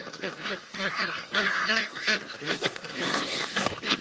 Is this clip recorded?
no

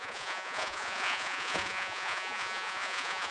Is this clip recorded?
no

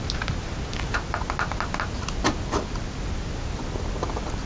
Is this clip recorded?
yes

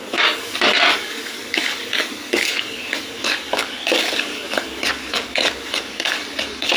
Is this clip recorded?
no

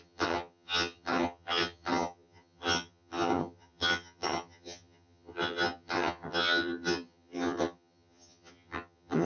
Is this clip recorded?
no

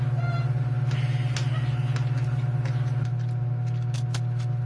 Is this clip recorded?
yes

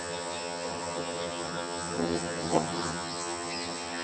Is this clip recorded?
no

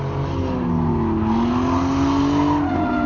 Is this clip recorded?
yes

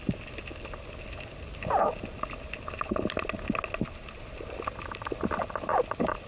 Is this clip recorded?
yes